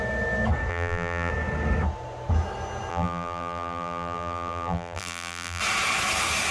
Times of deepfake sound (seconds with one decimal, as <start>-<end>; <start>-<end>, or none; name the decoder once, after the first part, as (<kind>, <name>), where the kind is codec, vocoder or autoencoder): 0.7-1.3 (vocoder, BigVGAN v2); 2.9-5.6